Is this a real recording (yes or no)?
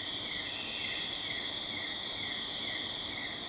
yes